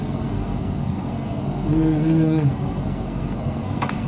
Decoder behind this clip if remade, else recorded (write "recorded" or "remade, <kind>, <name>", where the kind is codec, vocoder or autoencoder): remade, codec, SNAC